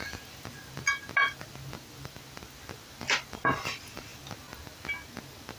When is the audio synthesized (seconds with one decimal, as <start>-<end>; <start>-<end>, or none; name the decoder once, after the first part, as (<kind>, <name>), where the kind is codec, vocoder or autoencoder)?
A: none